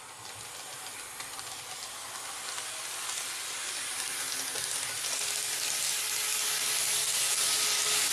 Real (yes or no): yes